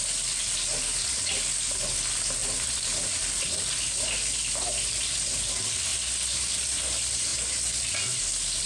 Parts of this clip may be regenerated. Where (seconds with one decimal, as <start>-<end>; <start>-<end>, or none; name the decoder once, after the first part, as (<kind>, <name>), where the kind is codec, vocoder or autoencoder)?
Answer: 2.4-5.4 (vocoder, BigVGAN v2)